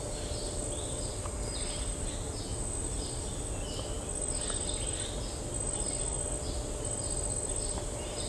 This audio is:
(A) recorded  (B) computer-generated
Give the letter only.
A